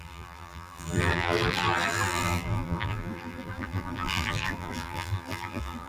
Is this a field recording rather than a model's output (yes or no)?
no